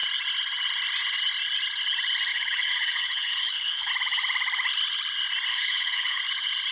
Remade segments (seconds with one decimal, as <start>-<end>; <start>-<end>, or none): 2.3-3.9; 5.5-6.2